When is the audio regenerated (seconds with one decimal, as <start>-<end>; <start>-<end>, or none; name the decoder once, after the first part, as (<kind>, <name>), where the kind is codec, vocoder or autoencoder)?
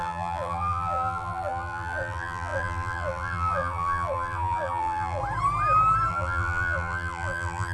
0.0-5.2 (vocoder, BigVGAN v2); 6.1-7.7